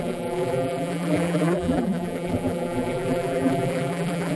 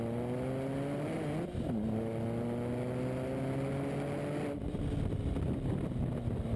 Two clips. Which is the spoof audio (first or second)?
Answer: first